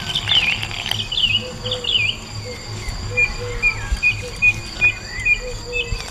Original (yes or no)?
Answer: yes